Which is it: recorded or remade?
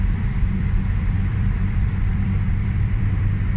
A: remade